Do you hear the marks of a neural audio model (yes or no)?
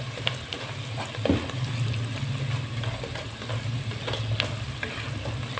no